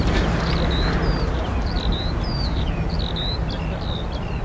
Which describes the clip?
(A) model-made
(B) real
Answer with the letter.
B